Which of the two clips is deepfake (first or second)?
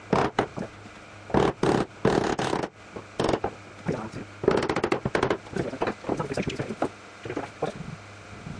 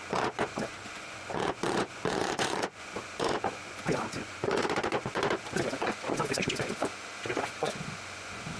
second